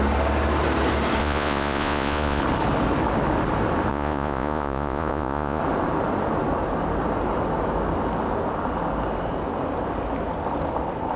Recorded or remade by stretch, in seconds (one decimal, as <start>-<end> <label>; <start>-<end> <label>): 0.0-1.2 recorded; 1.2-2.4 remade; 2.4-3.9 recorded; 3.9-5.6 remade; 5.6-11.2 recorded